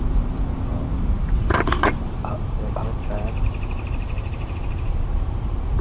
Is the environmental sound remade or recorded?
remade